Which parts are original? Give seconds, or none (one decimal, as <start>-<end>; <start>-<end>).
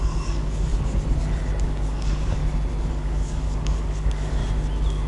0.7-1.6; 2.4-2.9; 4.4-5.1